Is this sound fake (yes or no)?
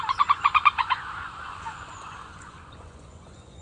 yes